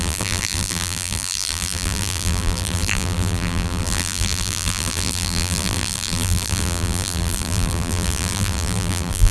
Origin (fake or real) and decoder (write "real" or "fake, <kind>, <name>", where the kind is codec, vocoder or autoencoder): fake, vocoder, BigVGAN v2